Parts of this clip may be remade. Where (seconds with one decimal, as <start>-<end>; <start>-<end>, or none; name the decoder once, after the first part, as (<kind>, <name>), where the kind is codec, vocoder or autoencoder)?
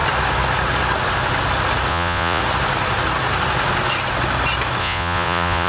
1.9-2.4 (vocoder, Vocos); 4.8-5.7